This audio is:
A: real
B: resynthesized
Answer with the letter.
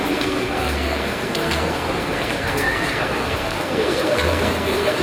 B